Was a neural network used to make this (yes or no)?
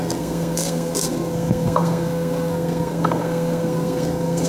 yes